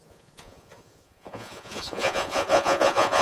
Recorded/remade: remade